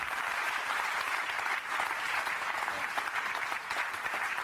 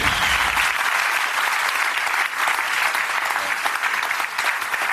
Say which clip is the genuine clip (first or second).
second